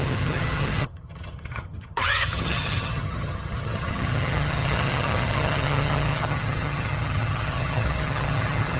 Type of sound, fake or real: fake